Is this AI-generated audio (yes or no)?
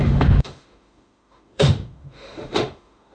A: yes